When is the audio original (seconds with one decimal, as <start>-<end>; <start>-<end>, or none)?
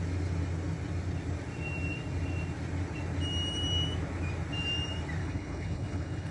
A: 0.0-5.2